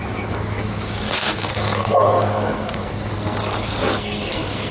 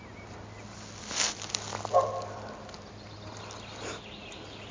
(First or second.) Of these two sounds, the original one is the second